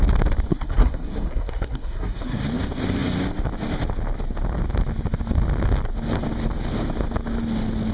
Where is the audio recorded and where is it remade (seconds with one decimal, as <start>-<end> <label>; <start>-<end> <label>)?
0.0-0.5 recorded; 0.5-2.4 remade; 2.4-7.9 recorded